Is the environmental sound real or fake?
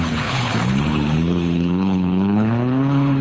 fake